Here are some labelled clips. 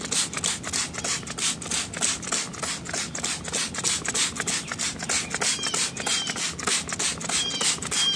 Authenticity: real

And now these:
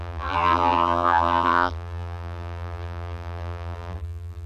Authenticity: fake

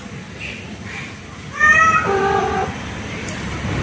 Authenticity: real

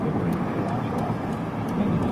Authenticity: real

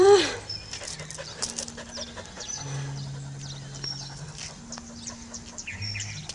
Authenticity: fake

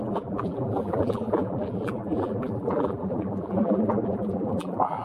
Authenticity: fake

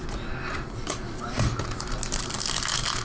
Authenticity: real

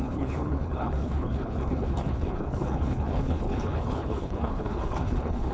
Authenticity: fake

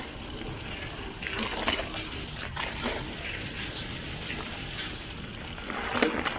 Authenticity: real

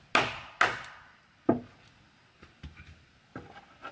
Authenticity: real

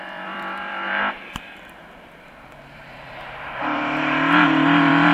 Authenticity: fake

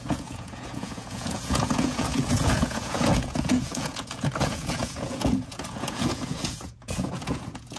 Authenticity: fake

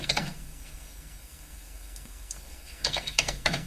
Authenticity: fake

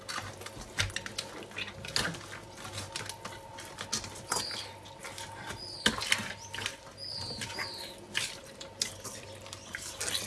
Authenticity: real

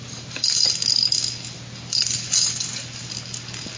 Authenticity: real